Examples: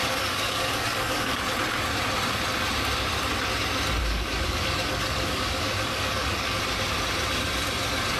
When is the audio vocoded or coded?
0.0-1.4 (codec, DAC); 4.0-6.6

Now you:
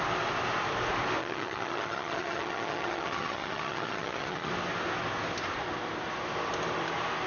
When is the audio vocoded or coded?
1.2-4.5 (vocoder, HiFi-GAN)

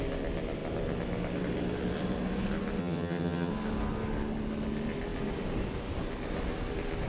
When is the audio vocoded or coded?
2.8-3.5 (vocoder, HiFi-GAN)

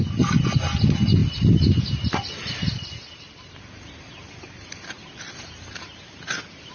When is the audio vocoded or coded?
none

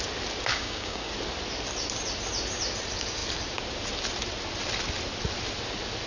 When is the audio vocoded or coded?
0.5-1.1 (codec, DAC)

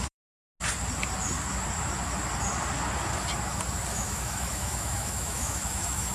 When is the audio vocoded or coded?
0.0-0.5 (autoencoder, DAC-VAE); 3.9-6.1

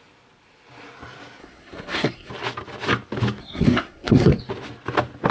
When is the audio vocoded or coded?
1.4-2.3 (codec, SNAC); 3.4-4.4

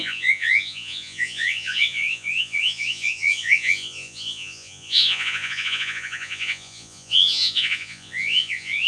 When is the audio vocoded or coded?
0.0-8.9 (vocoder, Vocos)